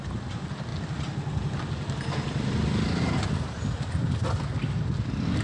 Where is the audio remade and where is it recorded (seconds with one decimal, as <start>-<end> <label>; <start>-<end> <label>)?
0.0-5.4 recorded